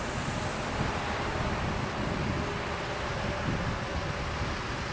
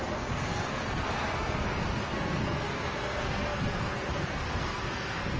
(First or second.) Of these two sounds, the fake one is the second